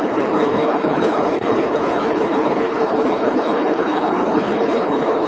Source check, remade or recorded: remade